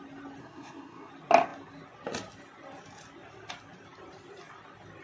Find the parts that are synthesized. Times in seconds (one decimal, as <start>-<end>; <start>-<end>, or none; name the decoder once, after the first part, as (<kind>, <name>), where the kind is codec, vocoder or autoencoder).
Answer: 0.4-1.1 (codec, SNAC)